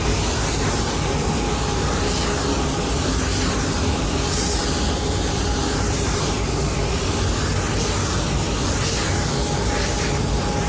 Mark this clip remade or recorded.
recorded